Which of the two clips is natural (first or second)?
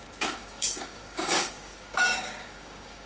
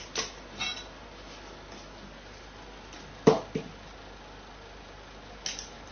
second